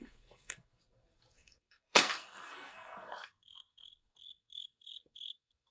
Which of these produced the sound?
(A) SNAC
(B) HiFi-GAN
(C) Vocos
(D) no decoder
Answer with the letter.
A